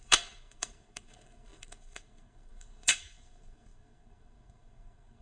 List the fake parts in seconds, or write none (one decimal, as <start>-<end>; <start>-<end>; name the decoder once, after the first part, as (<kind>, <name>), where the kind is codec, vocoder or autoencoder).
0.0-5.2 (codec, SNAC)